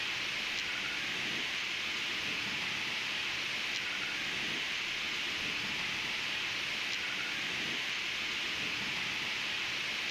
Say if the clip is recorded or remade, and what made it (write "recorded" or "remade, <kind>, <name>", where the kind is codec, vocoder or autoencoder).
recorded